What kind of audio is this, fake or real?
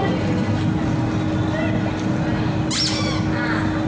real